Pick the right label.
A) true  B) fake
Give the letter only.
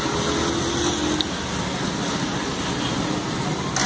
A